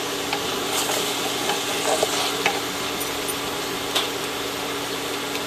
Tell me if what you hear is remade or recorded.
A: recorded